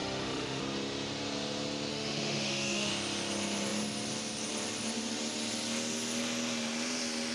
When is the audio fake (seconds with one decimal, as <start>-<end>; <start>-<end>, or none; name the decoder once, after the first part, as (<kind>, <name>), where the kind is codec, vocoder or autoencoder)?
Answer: 0.0-0.6 (autoencoder, DAC-VAE); 1.9-2.9